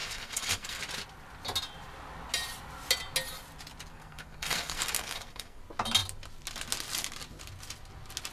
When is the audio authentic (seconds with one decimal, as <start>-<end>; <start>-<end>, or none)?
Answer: 0.8-3.9; 5.6-8.3